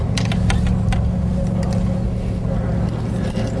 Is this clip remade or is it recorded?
recorded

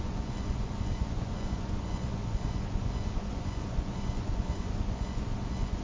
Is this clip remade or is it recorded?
remade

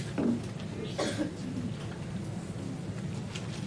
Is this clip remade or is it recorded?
recorded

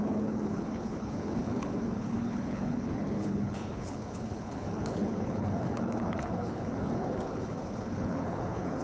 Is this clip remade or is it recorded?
remade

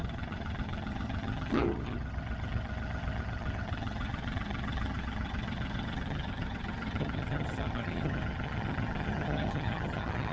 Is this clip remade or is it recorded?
remade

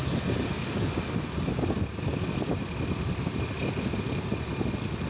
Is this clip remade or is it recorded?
recorded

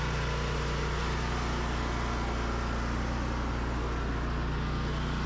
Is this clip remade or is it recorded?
recorded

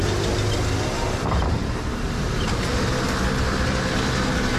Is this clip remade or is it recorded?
recorded